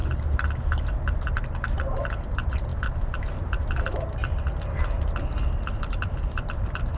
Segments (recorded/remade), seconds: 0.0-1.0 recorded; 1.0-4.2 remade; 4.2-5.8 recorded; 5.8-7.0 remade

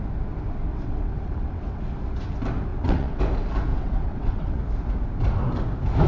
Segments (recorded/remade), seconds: 0.0-0.7 recorded; 0.7-1.8 remade; 1.8-2.7 recorded; 2.7-3.2 remade; 3.2-3.7 recorded; 3.7-4.6 remade; 4.6-6.1 recorded

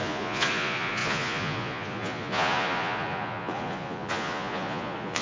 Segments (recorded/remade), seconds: 0.0-5.2 remade

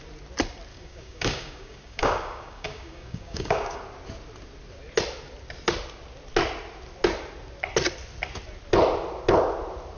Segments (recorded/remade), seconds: 0.0-0.7 recorded; 0.7-3.8 remade; 3.8-10.0 recorded

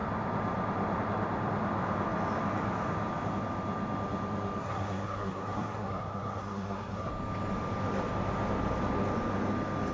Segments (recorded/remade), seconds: 0.0-4.6 recorded; 4.6-7.1 remade; 7.1-9.9 recorded

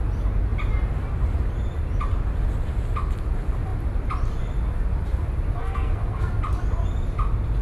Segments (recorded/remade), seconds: 0.0-5.6 recorded; 5.6-6.3 remade; 6.3-7.6 recorded